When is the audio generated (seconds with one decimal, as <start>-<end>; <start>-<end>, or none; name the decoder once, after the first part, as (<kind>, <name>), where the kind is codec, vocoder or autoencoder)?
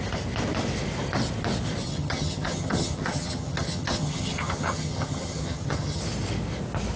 1.8-6.0 (vocoder, HiFi-GAN)